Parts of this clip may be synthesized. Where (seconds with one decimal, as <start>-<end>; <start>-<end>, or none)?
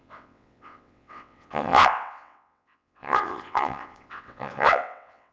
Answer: 0.0-5.3